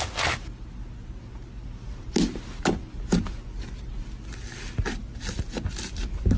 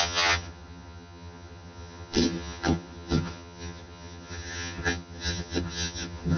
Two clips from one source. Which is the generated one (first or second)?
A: second